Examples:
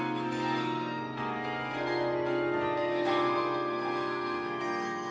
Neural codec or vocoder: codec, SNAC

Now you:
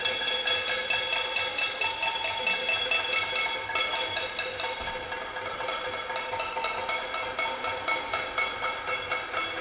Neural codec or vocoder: none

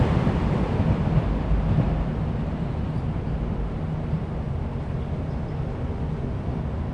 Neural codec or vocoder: none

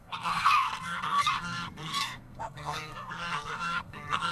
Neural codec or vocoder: codec, SNAC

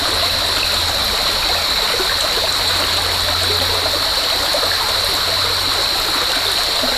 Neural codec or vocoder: none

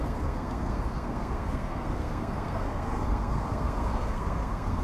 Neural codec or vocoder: codec, SNAC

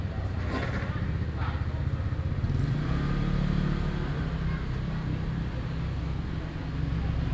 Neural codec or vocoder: none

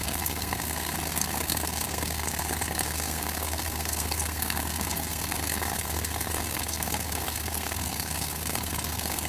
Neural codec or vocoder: codec, SNAC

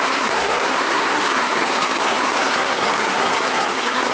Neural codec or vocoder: codec, SNAC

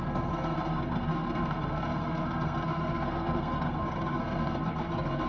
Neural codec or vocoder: codec, SNAC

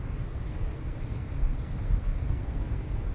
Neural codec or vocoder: codec, SNAC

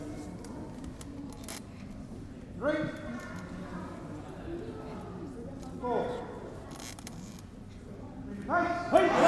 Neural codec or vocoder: none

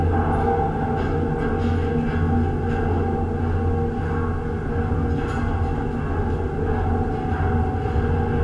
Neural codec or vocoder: none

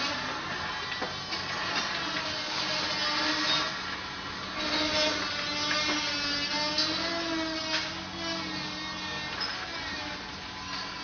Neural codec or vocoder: none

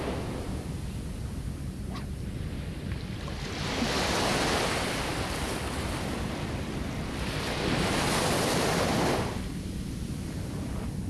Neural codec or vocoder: none